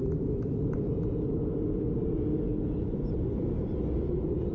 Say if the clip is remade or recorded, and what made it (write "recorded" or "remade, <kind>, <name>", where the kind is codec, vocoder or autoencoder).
remade, vocoder, BigVGAN v2